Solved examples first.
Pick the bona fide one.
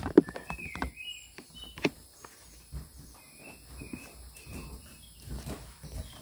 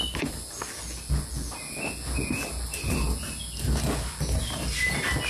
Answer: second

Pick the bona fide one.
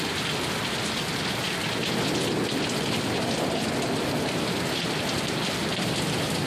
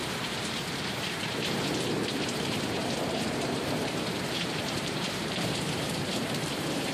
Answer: first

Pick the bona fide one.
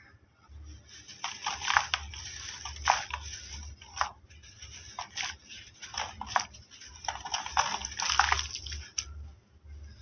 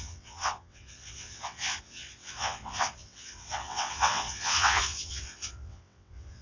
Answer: first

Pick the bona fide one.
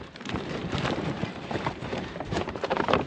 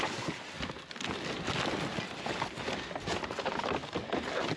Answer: second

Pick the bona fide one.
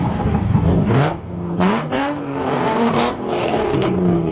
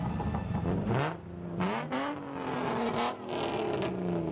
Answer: second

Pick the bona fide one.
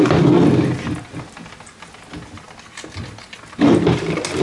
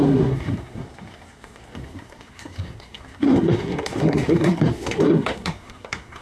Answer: first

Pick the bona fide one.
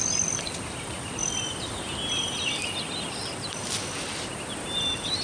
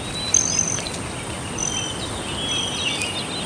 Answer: second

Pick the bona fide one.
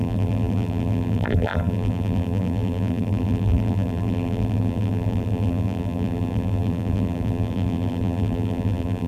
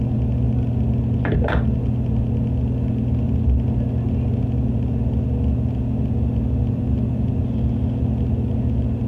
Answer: second